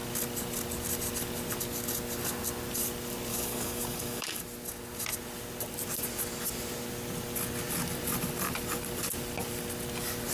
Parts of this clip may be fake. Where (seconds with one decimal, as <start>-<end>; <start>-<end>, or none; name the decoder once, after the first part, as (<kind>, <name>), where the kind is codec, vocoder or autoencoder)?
3.3-4.4 (codec, DAC)